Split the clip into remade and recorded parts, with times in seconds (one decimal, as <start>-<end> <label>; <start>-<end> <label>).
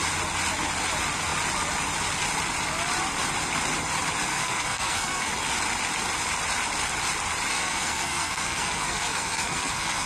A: 0.0-4.3 recorded; 4.3-5.3 remade; 5.3-7.5 recorded; 7.5-10.1 remade